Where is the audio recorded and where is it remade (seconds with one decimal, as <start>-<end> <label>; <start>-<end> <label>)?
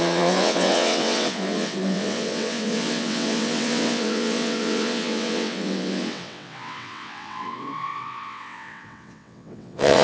0.0-10.0 remade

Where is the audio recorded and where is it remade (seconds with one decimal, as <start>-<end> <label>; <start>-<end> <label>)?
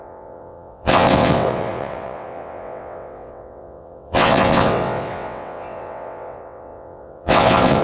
0.0-7.8 remade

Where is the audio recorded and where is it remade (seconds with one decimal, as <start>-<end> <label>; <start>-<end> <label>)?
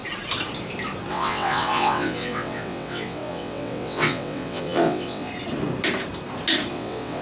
0.0-1.1 recorded; 1.1-5.3 remade; 5.3-6.7 recorded; 6.7-7.2 remade